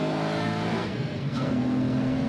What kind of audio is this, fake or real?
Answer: fake